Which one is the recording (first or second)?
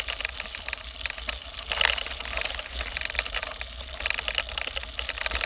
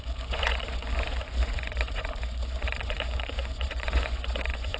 first